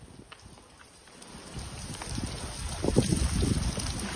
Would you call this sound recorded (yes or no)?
yes